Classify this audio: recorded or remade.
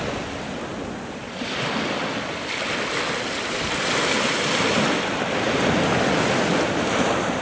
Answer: recorded